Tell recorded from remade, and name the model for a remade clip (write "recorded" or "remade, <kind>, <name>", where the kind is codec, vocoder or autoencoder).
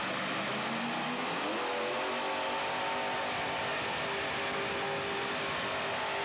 recorded